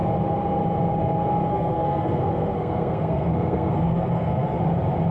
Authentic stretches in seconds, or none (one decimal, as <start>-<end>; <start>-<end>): 0.0-1.5; 4.6-5.1